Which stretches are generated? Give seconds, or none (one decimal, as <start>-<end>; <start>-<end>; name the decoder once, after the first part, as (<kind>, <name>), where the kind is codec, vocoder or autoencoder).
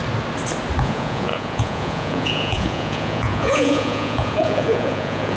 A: 0.8-5.4 (vocoder, Vocos)